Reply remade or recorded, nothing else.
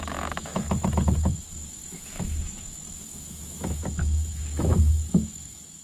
remade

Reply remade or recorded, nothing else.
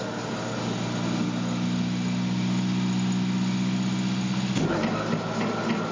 recorded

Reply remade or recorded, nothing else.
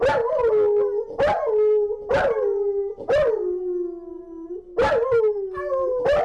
recorded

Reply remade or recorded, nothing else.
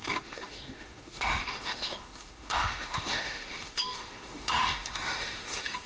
remade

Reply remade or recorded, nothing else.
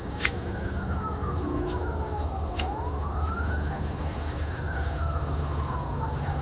remade